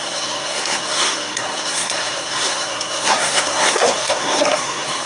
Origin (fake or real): fake